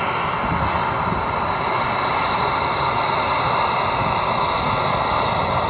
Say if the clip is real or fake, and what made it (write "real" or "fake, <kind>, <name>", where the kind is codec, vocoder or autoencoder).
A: real